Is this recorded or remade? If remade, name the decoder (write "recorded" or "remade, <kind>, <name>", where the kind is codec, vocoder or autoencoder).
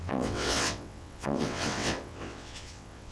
remade, vocoder, WaveNeXt